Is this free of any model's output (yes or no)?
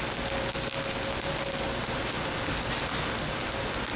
yes